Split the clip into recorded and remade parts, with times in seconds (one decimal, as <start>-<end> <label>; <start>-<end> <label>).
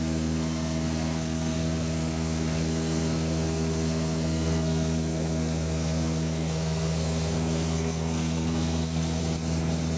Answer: 0.0-9.2 remade; 9.2-10.0 recorded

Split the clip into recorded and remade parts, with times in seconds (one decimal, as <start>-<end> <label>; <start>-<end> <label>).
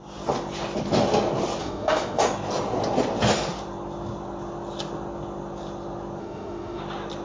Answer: 0.0-1.6 recorded; 1.6-2.2 remade; 2.2-6.2 recorded; 6.2-6.8 remade; 6.8-7.2 recorded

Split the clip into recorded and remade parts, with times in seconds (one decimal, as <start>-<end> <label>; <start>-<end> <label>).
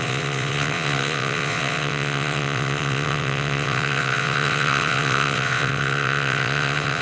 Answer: 0.0-7.0 remade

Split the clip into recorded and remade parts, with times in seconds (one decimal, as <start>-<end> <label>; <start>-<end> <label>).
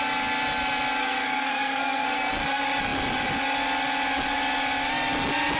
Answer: 0.0-1.0 recorded; 1.0-2.3 remade; 2.3-5.6 recorded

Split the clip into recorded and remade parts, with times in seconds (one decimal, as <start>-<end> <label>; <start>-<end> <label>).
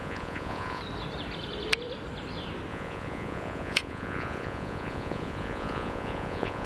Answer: 0.0-0.8 remade; 0.8-2.7 recorded; 2.7-6.7 remade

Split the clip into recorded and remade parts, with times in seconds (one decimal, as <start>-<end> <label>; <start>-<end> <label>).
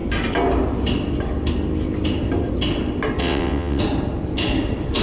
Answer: 0.0-3.2 recorded; 3.2-3.8 remade; 3.8-5.0 recorded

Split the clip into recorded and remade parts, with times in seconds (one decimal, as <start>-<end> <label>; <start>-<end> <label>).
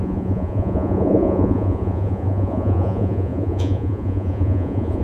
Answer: 0.0-5.0 remade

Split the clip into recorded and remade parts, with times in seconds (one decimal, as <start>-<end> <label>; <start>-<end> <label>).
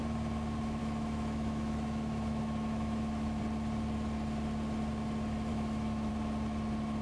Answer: 0.0-0.8 recorded; 0.8-3.4 remade; 3.4-5.5 recorded; 5.5-6.1 remade; 6.1-7.0 recorded